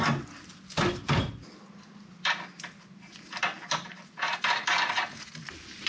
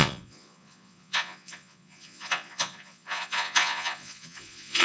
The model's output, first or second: second